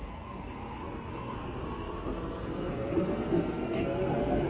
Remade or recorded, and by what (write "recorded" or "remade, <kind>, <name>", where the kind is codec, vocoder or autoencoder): remade, codec, SNAC